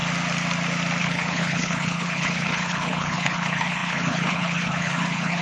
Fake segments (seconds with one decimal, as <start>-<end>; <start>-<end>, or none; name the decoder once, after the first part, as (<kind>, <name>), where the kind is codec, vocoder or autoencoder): 1.0-5.4 (codec, HILCodec)